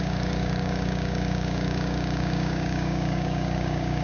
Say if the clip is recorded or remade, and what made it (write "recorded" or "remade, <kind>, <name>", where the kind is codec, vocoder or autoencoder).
remade, codec, DAC